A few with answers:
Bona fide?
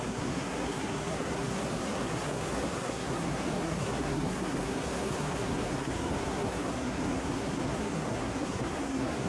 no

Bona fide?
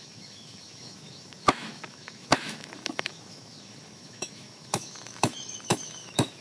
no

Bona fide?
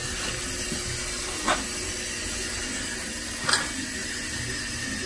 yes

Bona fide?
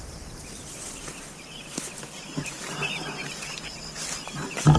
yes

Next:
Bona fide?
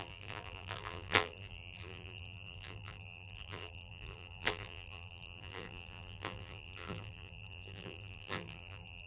no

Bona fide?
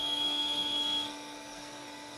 no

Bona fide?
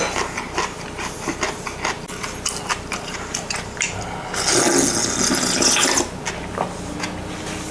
yes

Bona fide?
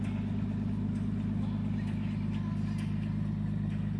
yes